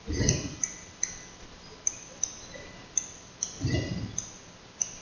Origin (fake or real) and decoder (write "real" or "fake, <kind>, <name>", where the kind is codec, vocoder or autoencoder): real